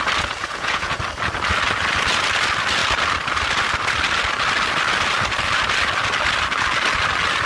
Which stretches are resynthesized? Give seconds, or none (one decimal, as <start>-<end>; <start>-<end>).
0.4-1.0